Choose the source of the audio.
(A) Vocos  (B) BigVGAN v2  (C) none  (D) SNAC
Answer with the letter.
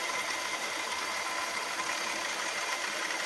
C